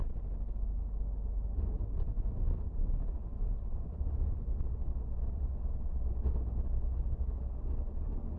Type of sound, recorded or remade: recorded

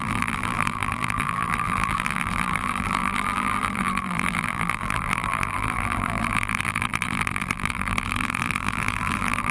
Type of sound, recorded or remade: remade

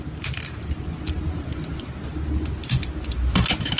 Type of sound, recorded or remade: recorded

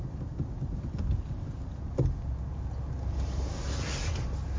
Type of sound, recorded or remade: recorded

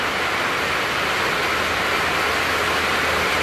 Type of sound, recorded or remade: recorded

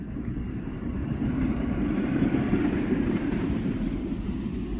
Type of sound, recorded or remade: remade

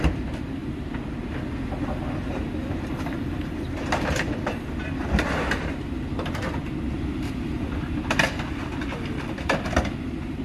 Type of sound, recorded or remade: remade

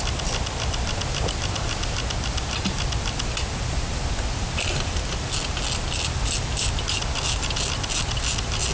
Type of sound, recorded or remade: recorded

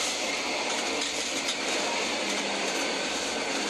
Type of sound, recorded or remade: remade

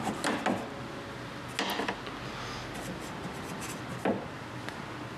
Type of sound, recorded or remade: recorded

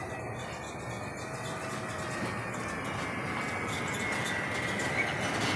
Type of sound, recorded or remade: recorded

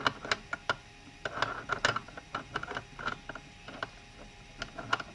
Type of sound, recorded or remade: recorded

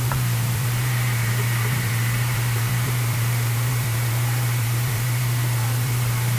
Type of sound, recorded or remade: remade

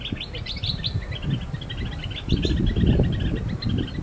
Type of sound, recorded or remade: recorded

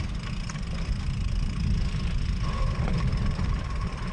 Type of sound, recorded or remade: recorded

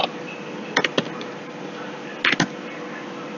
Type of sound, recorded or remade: recorded